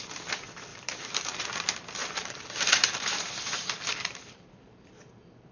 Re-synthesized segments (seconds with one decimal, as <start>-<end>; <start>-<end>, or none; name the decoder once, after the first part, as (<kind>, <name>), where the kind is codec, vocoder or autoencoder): 0.7-1.4 (vocoder, BigVGAN v2); 2.0-4.9